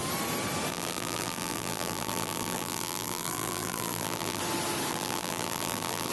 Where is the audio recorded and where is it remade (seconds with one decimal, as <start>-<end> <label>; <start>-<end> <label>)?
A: 0.0-0.7 recorded; 0.7-4.4 remade; 4.4-4.9 recorded; 4.9-6.1 remade